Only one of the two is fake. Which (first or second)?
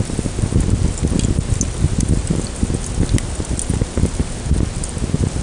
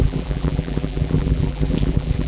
second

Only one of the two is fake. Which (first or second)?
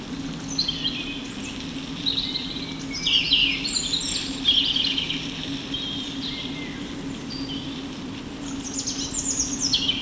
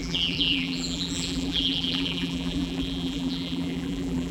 second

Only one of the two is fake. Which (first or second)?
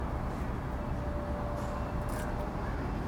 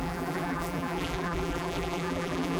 second